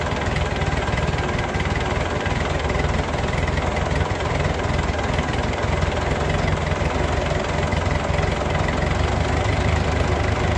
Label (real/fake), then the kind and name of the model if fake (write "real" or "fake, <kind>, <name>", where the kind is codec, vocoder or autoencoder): real